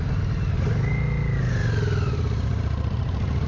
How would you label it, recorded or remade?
recorded